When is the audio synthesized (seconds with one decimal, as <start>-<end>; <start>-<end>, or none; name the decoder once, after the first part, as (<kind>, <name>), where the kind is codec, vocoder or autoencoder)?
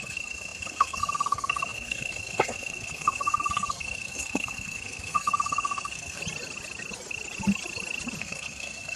0.0-6.2 (codec, SNAC); 8.2-9.0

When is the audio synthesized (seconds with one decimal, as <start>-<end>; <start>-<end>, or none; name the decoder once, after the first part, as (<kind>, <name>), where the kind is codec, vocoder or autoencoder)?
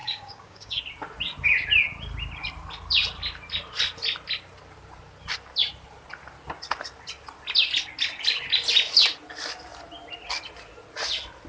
0.0-0.8 (codec, DAC)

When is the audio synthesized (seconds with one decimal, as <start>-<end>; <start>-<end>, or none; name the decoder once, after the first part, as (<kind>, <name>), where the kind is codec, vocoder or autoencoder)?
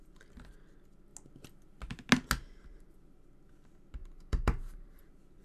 4.0-5.0 (vocoder, BigVGAN v2)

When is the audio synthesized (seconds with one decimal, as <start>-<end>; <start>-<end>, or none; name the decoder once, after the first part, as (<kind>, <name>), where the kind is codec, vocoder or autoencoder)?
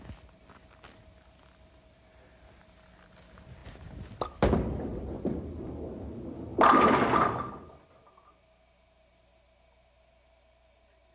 none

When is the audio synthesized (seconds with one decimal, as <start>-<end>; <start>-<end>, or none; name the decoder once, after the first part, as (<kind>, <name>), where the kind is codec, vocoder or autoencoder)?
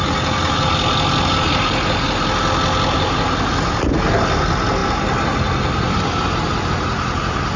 none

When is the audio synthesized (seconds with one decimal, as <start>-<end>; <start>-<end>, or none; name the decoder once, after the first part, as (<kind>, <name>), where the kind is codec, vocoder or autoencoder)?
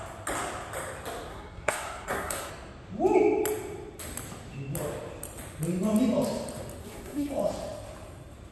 1.3-2.5 (codec, SNAC); 6.8-7.3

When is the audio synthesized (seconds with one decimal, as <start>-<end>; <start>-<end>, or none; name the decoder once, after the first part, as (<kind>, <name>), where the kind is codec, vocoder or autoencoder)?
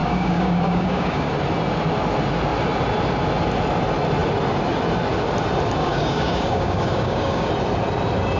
0.0-1.3 (codec, DAC); 5.8-7.5